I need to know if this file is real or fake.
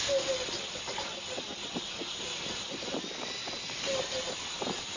real